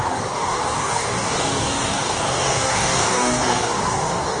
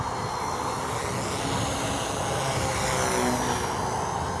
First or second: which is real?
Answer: second